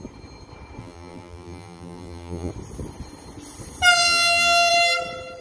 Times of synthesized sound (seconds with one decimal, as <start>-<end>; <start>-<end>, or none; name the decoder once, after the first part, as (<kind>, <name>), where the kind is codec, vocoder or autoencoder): 0.8-2.5 (vocoder, BigVGAN v2); 4.0-4.7